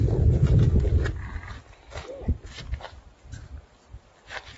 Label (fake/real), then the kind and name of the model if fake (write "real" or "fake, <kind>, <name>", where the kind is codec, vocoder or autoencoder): fake, vocoder, BigVGAN v2